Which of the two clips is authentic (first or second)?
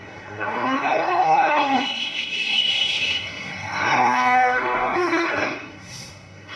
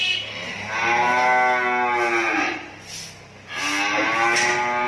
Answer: second